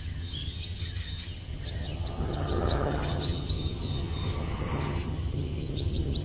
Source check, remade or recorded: remade